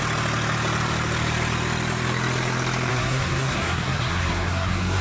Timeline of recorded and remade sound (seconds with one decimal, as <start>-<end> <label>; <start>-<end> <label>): 0.0-2.9 recorded; 2.9-5.0 remade